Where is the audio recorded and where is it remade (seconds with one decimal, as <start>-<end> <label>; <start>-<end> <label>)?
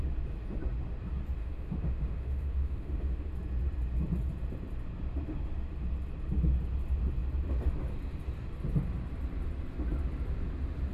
0.0-1.4 recorded; 1.4-3.3 remade; 3.3-10.9 recorded